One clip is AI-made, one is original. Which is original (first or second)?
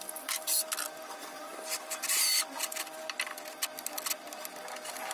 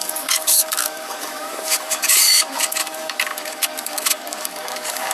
first